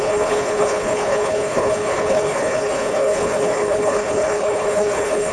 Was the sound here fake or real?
fake